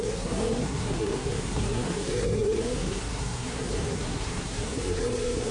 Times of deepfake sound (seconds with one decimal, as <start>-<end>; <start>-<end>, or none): 0.0-5.5